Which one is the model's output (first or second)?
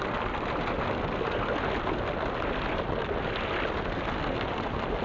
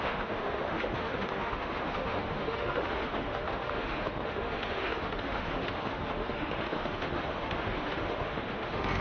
second